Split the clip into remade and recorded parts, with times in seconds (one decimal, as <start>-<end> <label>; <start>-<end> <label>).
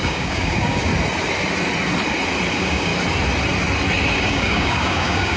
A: 0.0-0.9 remade; 0.9-2.5 recorded; 2.5-2.9 remade; 2.9-4.1 recorded; 4.1-5.4 remade